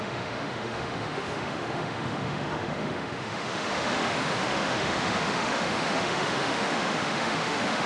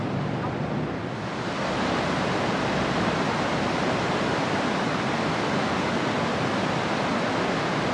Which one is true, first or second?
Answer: second